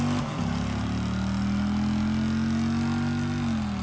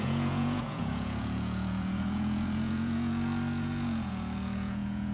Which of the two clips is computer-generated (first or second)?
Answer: second